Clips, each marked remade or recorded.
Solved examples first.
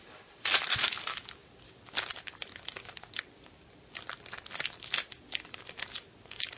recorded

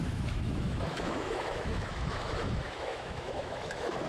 remade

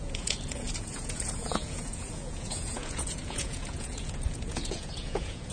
remade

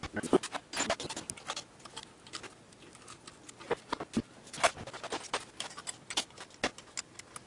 recorded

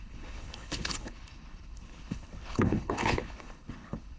remade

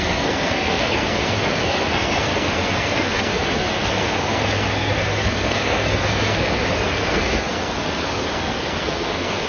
remade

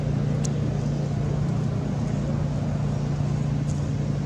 recorded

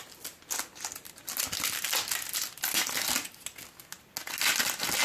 recorded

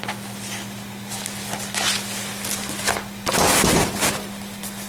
recorded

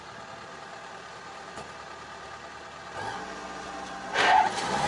recorded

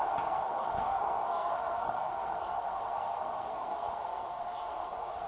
remade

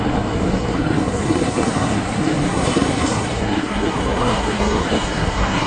remade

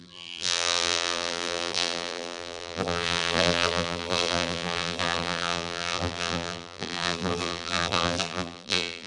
remade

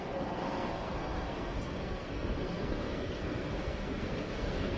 remade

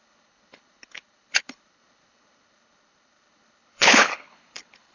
remade